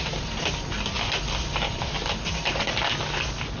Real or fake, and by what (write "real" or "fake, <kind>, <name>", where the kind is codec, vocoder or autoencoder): real